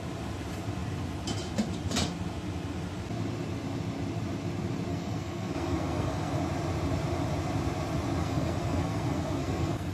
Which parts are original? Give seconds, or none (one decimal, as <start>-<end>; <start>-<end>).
0.0-4.9; 6.4-8.2